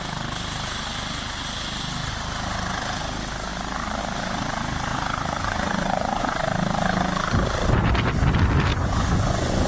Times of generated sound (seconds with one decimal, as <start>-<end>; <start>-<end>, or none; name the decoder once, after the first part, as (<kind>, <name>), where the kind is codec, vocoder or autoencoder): 4.9-6.4 (vocoder, Vocos); 8.7-9.7